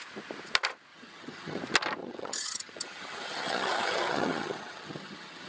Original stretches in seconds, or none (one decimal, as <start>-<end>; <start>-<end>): 0.0-0.9; 1.6-2.0